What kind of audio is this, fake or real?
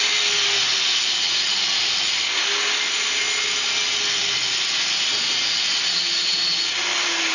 real